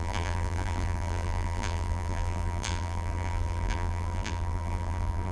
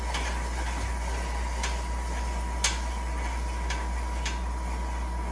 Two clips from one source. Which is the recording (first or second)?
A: second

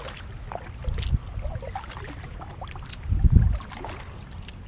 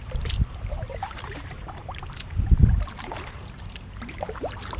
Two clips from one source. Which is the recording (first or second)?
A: first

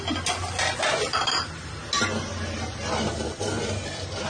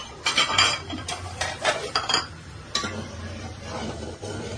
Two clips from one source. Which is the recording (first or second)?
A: first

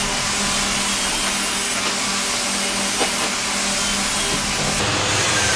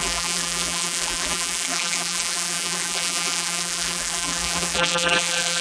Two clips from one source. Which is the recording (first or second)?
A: first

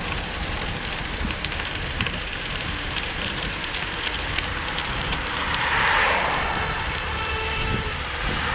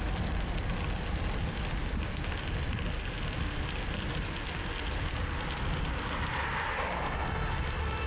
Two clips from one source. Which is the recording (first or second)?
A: second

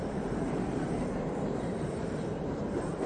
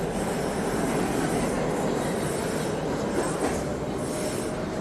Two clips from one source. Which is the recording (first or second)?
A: second